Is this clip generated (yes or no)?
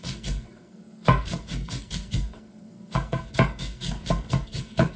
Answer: yes